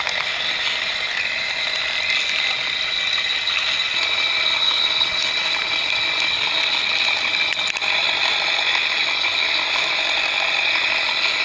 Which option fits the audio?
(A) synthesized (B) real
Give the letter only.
B